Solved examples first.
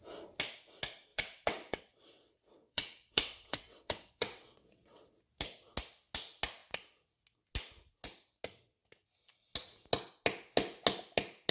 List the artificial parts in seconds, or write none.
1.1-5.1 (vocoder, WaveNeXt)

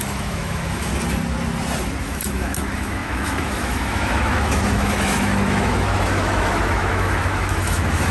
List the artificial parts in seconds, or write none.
0.0-0.9 (autoencoder, DAC-VAE); 2.0-8.1

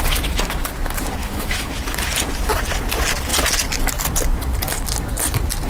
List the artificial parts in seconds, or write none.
1.2-1.7 (autoencoder, DAC-VAE)

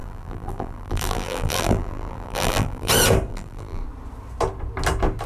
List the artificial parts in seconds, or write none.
0.0-2.9 (vocoder, BigVGAN v2); 3.3-3.8